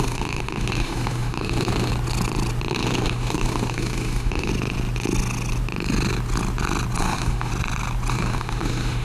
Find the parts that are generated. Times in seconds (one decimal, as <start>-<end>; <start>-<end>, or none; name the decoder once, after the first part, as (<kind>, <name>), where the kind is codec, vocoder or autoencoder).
0.0-1.9 (autoencoder, DAC-VAE); 2.7-4.5; 7.0-7.5; 8.1-9.0